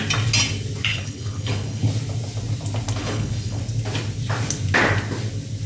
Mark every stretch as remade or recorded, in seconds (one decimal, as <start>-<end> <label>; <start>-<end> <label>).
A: 0.0-0.9 recorded; 0.9-1.9 remade; 1.9-3.0 recorded; 3.0-3.6 remade; 3.6-5.7 recorded